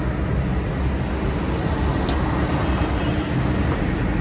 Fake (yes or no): no